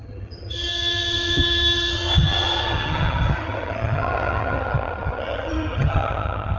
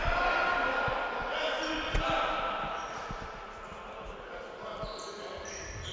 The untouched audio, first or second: second